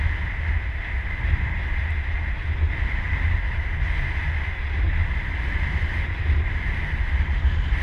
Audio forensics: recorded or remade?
recorded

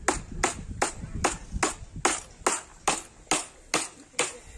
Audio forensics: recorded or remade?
recorded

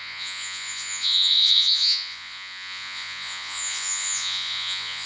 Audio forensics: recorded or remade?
remade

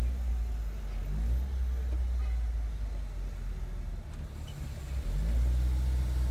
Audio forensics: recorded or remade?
recorded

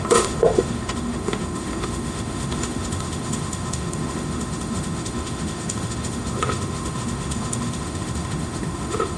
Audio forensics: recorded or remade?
remade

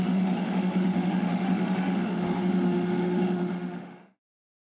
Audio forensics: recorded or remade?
remade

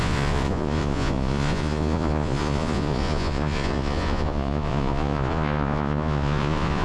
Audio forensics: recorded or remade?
remade